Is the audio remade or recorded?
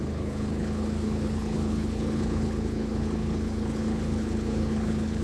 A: remade